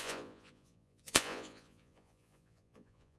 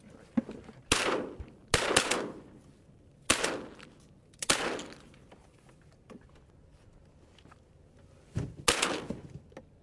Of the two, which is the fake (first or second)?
first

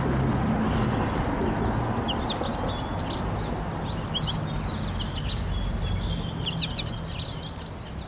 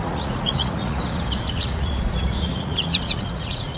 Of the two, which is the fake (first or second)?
second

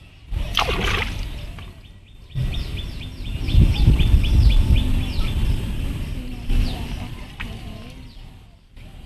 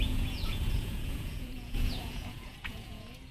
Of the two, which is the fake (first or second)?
second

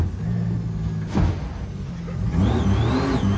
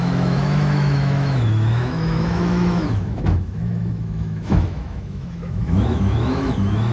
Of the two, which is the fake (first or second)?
second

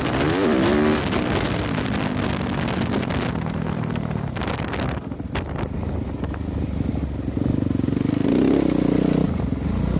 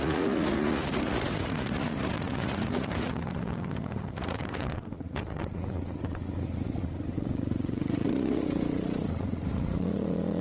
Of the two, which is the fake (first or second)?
second